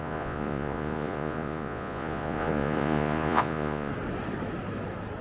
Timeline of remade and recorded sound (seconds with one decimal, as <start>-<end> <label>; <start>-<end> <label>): 0.0-3.9 remade; 3.9-5.2 recorded